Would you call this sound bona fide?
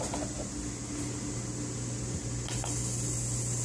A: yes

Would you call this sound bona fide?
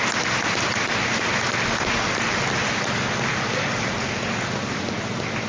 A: yes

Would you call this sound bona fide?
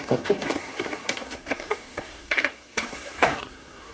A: no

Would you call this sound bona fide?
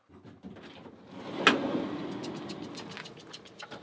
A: yes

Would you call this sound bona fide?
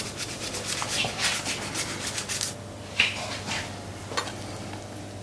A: yes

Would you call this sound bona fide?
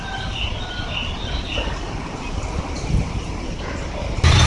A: yes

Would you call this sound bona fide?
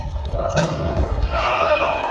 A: no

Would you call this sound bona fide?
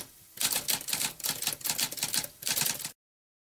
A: yes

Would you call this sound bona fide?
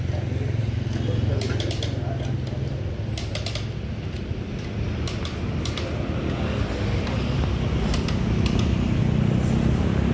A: yes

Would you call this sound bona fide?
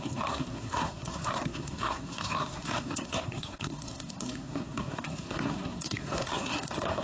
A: no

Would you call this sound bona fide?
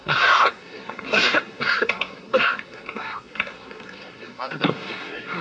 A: no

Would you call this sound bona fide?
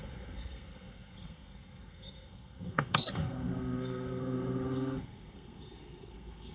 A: no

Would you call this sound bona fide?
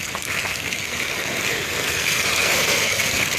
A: no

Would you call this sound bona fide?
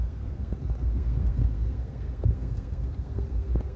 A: no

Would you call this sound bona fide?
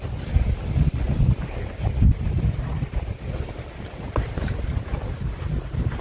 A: yes